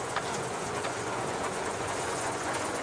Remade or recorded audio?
remade